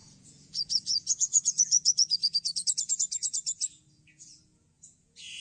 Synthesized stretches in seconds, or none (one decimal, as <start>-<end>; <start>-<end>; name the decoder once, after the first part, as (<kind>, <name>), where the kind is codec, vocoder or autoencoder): 0.0-5.4 (vocoder, Vocos)